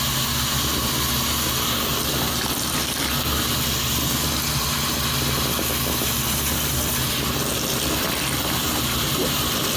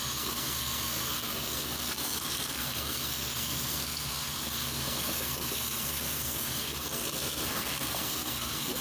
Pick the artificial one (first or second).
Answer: second